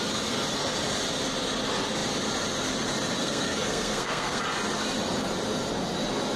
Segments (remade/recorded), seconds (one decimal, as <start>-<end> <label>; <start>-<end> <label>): 0.0-3.2 recorded; 3.2-4.4 remade; 4.4-6.4 recorded